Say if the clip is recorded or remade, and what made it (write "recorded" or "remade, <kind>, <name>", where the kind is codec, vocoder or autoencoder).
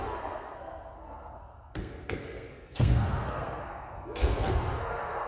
remade, codec, SNAC